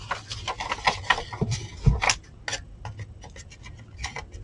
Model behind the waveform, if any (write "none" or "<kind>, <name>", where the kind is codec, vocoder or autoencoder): none